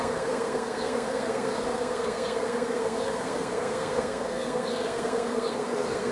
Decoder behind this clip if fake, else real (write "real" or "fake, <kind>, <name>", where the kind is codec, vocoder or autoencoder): fake, codec, SNAC